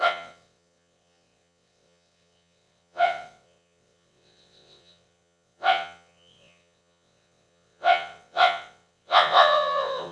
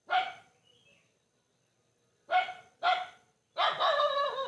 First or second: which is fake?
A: first